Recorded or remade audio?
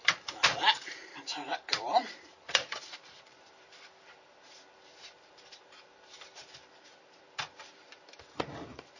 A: remade